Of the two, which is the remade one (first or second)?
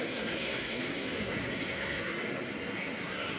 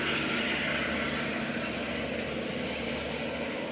first